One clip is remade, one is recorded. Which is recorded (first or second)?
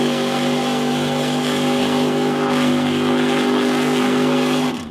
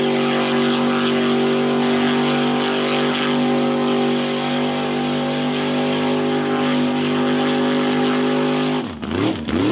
second